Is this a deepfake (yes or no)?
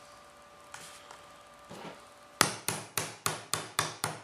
no